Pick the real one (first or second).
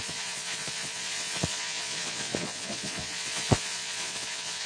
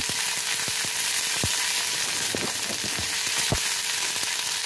second